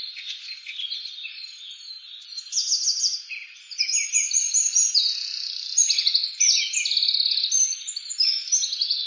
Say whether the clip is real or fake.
real